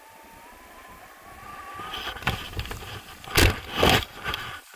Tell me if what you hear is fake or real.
real